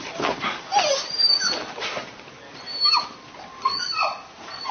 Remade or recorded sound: recorded